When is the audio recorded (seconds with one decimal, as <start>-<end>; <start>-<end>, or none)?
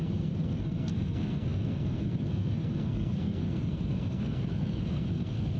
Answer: none